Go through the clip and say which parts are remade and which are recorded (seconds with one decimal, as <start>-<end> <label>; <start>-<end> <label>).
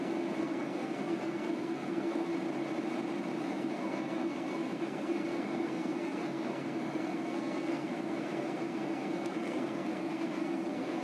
0.0-2.3 remade; 2.3-3.4 recorded; 3.4-11.0 remade